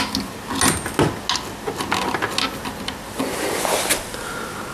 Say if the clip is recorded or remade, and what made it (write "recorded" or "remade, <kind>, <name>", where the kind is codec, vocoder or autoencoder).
recorded